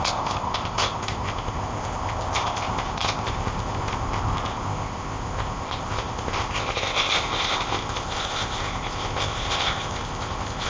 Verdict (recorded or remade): remade